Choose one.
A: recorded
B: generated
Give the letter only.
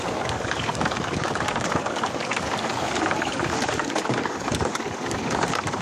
B